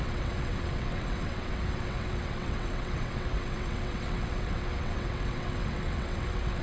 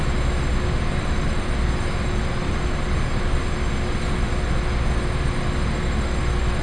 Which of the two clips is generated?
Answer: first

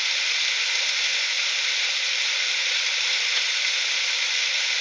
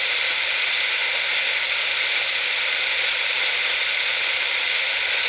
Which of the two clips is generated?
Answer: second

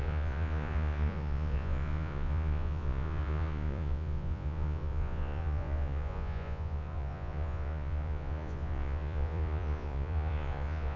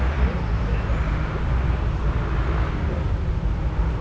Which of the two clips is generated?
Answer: first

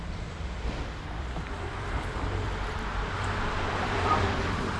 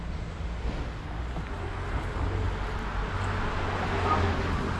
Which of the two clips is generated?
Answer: first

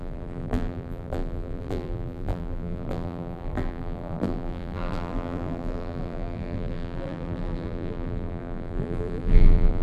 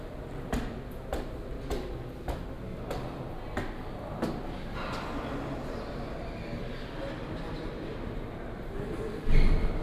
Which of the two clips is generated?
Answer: first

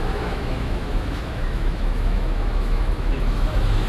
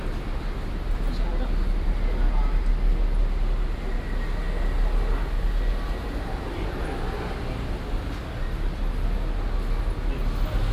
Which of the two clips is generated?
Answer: first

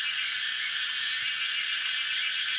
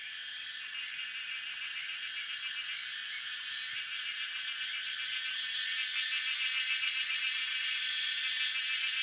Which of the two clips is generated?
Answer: first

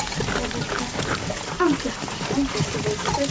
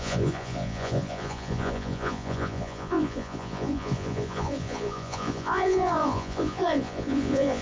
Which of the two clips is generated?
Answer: second